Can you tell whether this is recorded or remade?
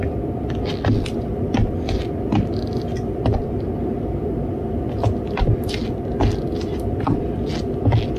recorded